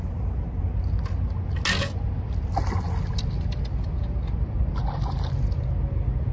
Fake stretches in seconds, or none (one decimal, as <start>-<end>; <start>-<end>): none